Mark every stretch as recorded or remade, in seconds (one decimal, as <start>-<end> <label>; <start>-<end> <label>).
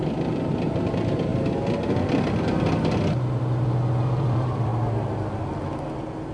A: 0.0-1.3 remade; 1.3-4.0 recorded; 4.0-4.7 remade; 4.7-5.5 recorded; 5.5-6.3 remade